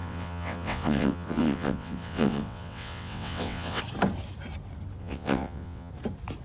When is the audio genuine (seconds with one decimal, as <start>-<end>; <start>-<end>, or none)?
3.8-5.0; 5.9-6.4

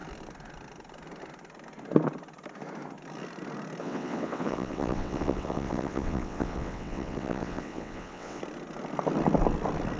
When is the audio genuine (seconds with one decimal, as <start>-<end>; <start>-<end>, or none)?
0.0-3.8; 8.4-10.0

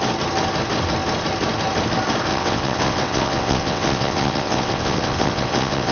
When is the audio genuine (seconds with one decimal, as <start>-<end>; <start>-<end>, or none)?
0.0-2.3

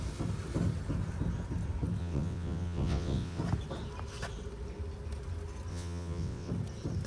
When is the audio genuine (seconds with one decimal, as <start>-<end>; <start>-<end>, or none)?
0.0-2.0; 3.4-5.7; 6.5-7.1

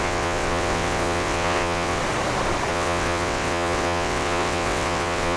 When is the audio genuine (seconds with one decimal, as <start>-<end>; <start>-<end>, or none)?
2.0-2.7

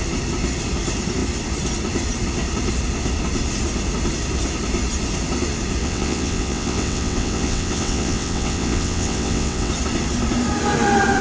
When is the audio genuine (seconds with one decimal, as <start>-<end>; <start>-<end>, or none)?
0.0-5.8; 9.7-11.2

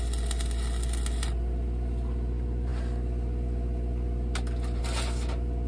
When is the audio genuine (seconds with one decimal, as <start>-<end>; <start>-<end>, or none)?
0.0-5.7